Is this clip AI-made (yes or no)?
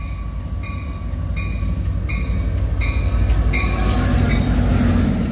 no